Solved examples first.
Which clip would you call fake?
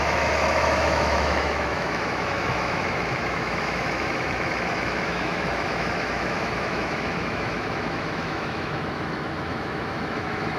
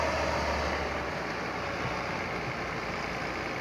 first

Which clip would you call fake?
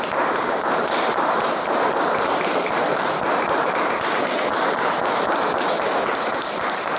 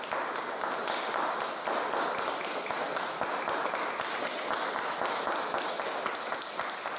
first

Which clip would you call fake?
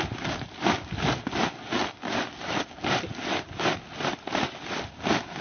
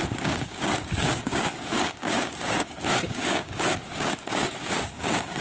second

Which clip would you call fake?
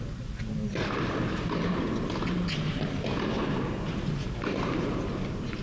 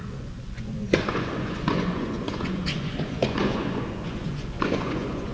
second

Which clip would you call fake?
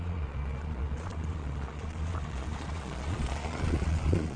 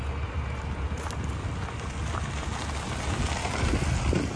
first